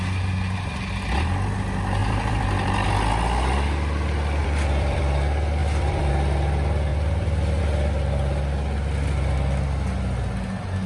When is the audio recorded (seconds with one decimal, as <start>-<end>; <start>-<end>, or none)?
0.0-2.0; 2.9-4.4; 5.0-5.6; 6.1-6.9; 7.6-10.9